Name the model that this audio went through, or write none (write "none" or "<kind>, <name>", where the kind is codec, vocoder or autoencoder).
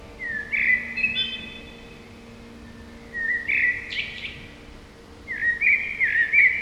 none